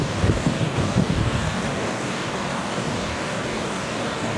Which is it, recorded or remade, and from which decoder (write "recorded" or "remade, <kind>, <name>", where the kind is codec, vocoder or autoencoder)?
remade, codec, DAC